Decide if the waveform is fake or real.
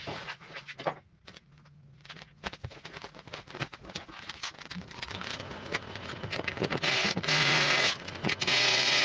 fake